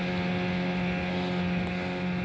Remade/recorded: recorded